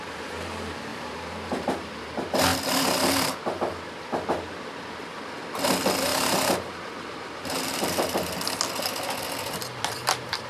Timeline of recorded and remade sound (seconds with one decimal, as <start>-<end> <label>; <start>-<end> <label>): 0.0-0.9 recorded; 0.9-2.1 remade; 2.1-6.1 recorded; 6.1-8.3 remade; 8.3-10.5 recorded